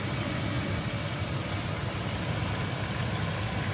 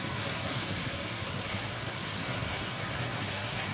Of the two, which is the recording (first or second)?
first